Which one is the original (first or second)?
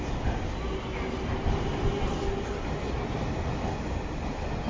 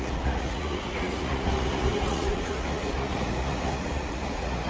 first